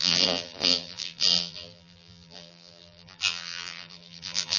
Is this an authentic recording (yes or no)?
no